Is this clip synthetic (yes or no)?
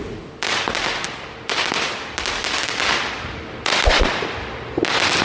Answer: no